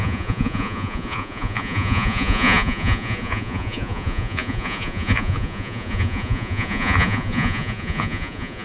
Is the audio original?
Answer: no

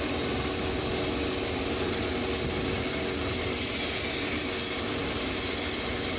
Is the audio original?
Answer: yes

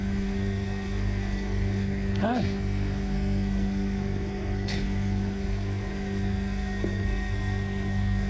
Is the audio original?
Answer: no